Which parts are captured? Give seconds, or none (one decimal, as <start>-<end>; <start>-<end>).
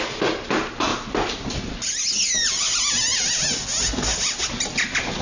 0.0-0.9; 1.7-5.2